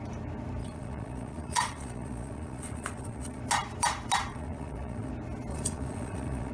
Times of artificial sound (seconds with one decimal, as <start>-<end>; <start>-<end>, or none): 0.6-3.4; 4.3-5.1; 5.5-6.5